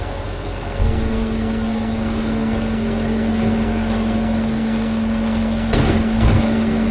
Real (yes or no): no